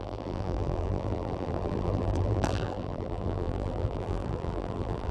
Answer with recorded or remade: remade